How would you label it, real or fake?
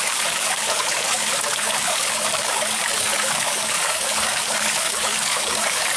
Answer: fake